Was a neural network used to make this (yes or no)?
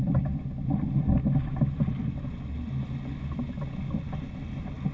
no